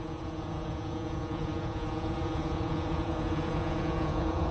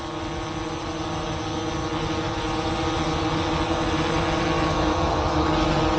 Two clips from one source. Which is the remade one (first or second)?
first